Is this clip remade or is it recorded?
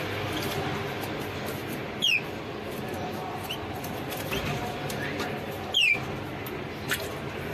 recorded